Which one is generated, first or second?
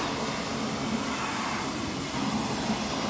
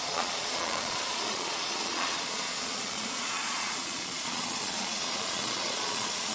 second